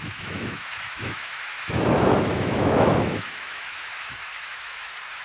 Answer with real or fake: fake